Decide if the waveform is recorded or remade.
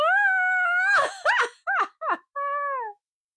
remade